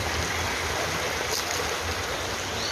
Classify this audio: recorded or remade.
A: recorded